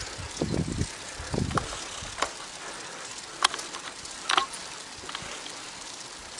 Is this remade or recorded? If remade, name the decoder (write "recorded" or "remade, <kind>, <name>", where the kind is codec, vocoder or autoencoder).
recorded